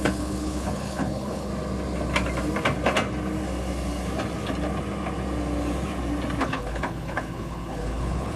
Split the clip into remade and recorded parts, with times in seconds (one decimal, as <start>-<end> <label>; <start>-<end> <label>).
0.0-1.5 remade; 1.5-6.4 recorded; 6.4-8.4 remade